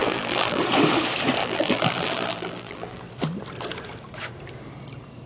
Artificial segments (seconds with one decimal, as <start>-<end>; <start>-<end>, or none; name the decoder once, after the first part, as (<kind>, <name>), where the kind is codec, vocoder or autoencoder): 0.0-0.6 (vocoder, BigVGAN v2); 1.4-3.0